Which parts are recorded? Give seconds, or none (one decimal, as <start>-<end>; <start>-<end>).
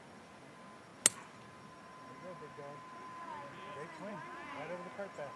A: 0.0-5.4